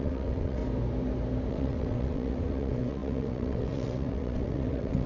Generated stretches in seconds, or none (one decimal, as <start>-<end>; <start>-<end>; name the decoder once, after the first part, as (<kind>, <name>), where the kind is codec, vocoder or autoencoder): 0.0-0.6 (vocoder, WaveNeXt); 1.5-5.1